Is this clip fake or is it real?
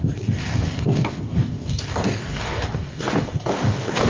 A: fake